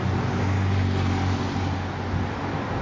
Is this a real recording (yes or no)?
yes